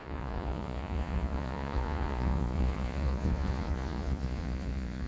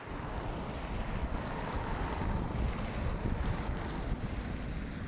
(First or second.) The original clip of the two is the second